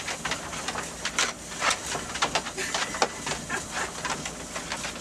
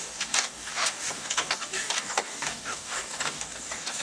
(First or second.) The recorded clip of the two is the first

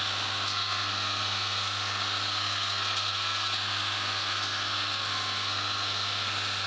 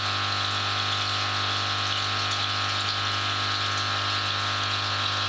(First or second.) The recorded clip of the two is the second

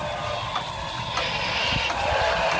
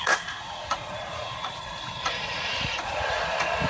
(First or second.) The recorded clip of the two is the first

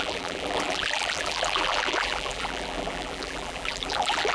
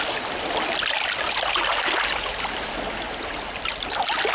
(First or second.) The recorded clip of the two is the second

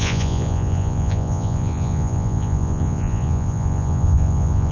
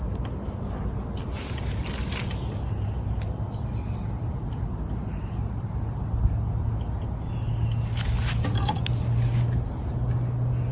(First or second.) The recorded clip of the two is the second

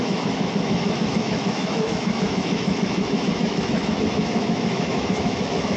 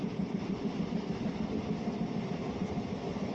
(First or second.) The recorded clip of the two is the second